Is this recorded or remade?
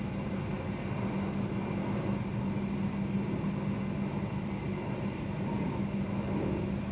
recorded